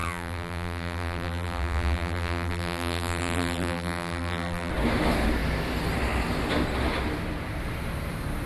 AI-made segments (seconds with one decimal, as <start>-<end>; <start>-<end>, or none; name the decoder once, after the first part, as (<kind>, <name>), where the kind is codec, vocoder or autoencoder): 0.0-4.7 (vocoder, BigVGAN v2)